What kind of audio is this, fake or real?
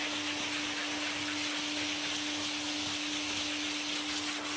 real